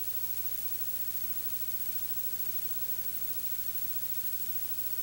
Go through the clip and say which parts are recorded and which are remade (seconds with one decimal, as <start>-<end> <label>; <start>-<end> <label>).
0.0-5.0 recorded